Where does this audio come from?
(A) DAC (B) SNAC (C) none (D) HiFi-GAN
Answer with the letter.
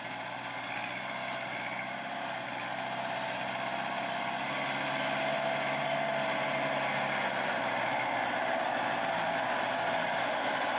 C